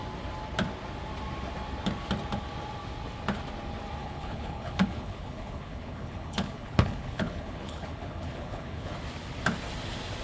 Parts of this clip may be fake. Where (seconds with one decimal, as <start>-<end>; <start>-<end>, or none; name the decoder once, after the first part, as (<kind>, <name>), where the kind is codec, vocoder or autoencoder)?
4.0-8.9 (codec, HILCodec)